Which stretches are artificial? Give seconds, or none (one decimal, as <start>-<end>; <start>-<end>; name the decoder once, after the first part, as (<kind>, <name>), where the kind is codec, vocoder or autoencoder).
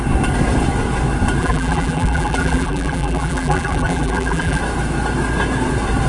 1.4-4.6 (vocoder, BigVGAN v2)